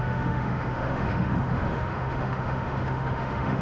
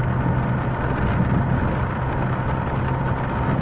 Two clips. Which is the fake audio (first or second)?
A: first